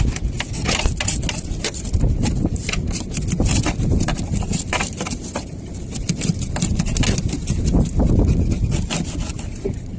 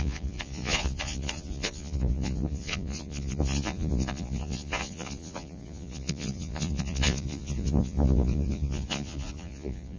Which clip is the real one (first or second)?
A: first